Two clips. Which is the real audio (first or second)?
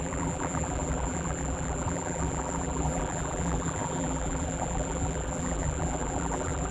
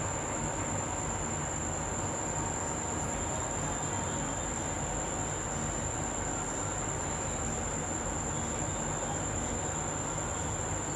second